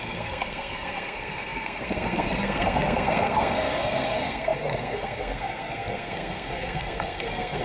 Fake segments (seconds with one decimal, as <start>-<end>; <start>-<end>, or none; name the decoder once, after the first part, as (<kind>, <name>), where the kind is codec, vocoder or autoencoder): 0.0-7.6 (codec, SNAC)